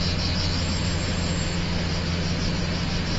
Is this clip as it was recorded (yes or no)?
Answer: yes